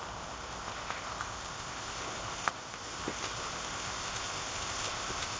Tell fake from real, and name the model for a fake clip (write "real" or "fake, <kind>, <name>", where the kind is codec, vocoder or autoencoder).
fake, codec, ZipCodec